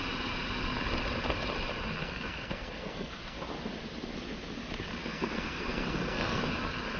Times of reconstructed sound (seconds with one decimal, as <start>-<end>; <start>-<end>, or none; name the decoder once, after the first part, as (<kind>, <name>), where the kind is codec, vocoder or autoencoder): 2.0-3.4 (codec, SNAC); 5.0-6.4